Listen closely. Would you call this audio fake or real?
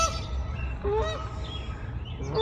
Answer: real